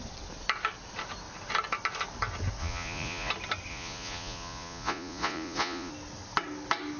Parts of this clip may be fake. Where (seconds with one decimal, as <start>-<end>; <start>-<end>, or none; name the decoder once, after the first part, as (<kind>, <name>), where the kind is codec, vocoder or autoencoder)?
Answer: 2.6-3.3 (vocoder, Vocos); 3.7-5.9

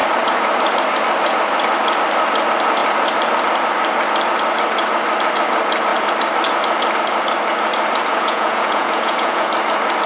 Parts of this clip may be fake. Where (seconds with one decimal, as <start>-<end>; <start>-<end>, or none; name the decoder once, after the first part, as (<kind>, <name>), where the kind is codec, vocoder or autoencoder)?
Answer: 8.1-9.5 (vocoder, Vocos)

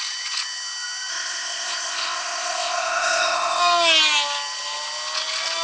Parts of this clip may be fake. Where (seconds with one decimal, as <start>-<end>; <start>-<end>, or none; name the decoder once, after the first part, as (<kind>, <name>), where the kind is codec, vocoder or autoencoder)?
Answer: 1.1-3.6 (codec, ZipCodec)